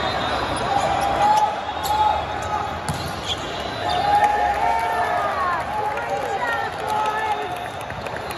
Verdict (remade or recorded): recorded